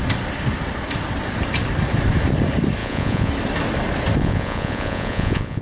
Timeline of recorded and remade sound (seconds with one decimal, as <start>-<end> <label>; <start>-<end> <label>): 0.0-2.8 recorded; 2.8-3.3 remade; 3.3-4.2 recorded; 4.2-5.6 remade